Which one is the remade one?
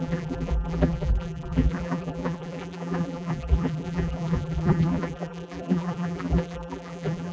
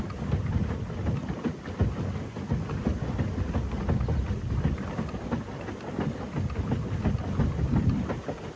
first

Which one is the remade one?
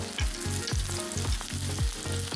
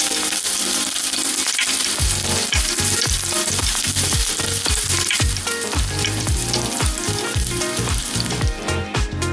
second